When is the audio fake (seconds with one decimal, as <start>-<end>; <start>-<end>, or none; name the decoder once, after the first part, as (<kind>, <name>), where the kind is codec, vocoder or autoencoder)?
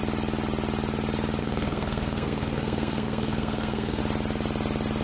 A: 1.4-4.0 (codec, SNAC)